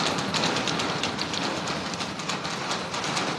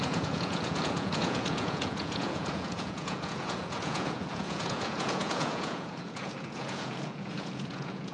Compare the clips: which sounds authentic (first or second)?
first